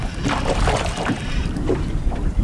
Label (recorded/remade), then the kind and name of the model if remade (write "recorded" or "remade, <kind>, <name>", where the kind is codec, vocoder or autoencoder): recorded